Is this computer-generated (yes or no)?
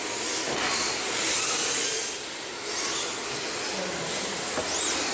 no